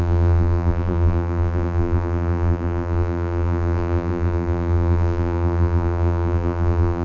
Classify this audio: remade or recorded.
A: remade